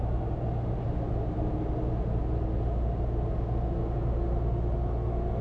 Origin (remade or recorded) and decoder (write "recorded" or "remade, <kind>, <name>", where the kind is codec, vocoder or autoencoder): recorded